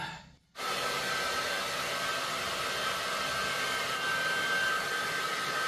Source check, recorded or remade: recorded